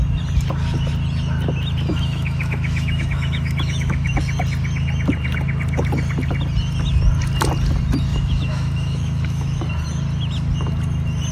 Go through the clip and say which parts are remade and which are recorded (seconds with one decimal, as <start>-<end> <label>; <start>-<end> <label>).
0.0-1.9 recorded; 1.9-4.1 remade; 4.1-8.1 recorded; 8.1-9.6 remade; 9.6-11.3 recorded